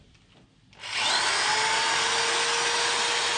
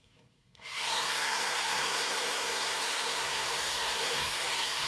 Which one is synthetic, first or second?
second